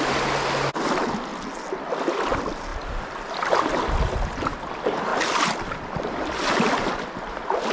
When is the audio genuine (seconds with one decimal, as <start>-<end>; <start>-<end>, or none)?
0.0-7.7